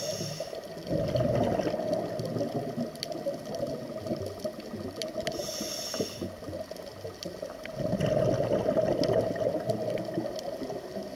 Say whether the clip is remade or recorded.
recorded